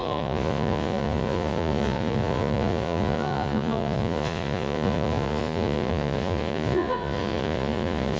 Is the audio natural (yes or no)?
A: no